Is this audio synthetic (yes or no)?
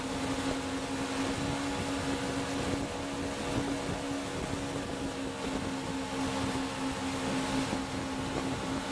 no